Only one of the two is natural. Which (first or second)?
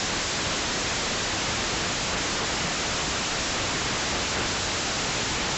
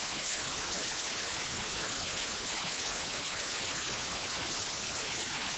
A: first